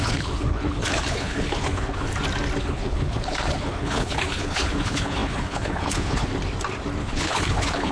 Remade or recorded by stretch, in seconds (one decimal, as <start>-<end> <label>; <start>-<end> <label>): 0.0-2.1 remade; 2.1-2.6 recorded; 2.6-6.3 remade; 6.3-7.0 recorded; 7.0-7.9 remade